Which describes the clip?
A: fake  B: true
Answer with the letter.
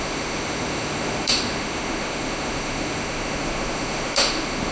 A